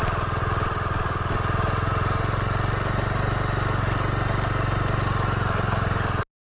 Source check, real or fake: real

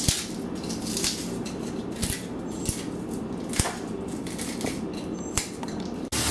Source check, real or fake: real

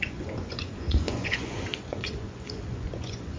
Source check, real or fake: fake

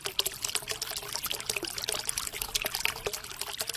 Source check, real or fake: real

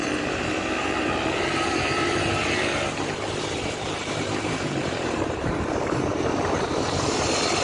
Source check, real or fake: fake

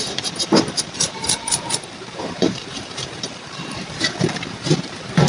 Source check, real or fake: fake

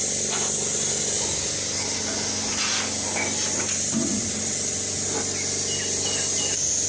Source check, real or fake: real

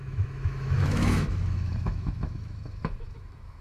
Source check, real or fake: fake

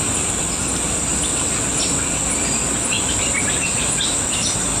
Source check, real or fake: real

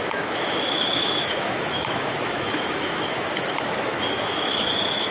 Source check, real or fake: fake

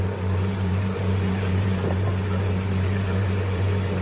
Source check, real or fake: fake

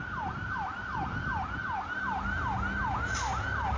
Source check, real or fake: real